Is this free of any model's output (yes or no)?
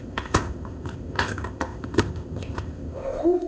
no